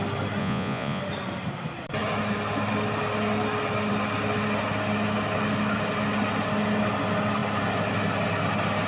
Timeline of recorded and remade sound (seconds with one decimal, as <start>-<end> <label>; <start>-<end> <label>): 0.0-0.4 recorded; 0.4-1.0 remade; 1.0-8.9 recorded